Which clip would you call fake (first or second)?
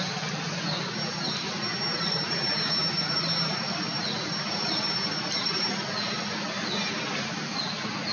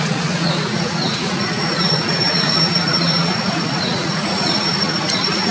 second